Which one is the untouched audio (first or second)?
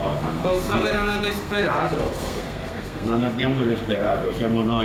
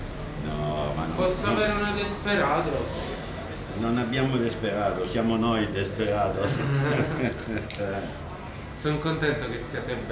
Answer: second